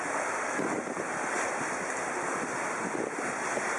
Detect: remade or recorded recorded